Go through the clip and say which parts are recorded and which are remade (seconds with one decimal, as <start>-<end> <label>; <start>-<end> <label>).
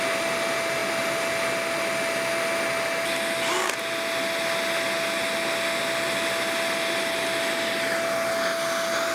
0.0-9.1 recorded